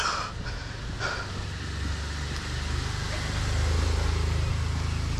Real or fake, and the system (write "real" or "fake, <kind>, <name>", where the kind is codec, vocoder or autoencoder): real